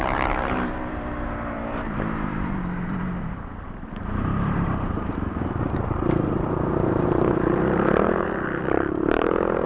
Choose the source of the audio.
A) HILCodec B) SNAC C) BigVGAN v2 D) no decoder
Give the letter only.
C